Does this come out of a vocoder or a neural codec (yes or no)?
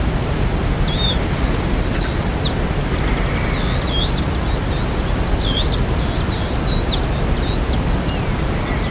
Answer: no